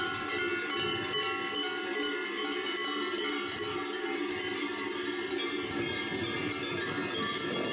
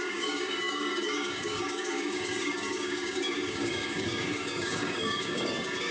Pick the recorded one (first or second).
first